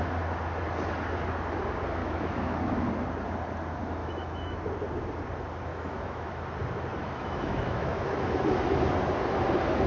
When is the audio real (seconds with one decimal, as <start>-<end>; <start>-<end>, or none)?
0.0-2.0; 2.9-4.0; 4.6-5.7; 6.4-7.0; 8.2-9.9